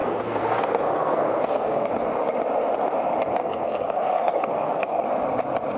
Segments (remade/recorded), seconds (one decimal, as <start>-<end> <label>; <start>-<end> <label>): 0.0-1.9 remade; 1.9-3.4 recorded; 3.4-5.1 remade; 5.1-5.8 recorded